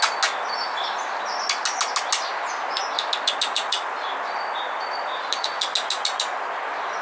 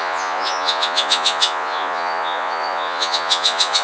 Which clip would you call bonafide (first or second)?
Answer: first